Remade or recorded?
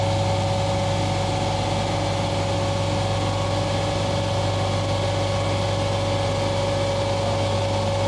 recorded